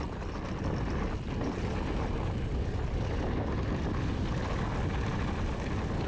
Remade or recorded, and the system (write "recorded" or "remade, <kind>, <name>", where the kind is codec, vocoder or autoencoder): recorded